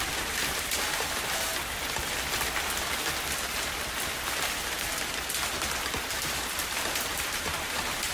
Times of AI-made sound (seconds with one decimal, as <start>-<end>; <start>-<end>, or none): 0.0-1.5; 6.0-8.1